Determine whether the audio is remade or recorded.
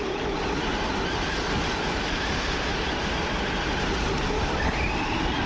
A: recorded